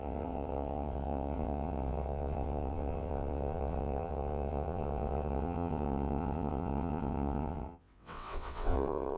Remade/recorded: remade